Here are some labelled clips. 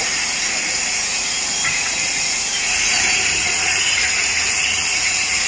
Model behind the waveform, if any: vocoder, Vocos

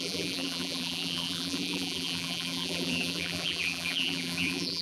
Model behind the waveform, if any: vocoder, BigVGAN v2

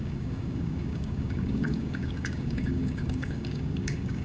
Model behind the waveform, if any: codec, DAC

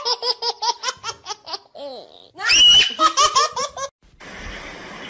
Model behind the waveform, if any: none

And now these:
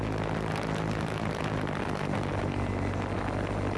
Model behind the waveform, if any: none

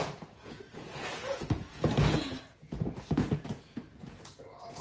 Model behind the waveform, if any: vocoder, Vocos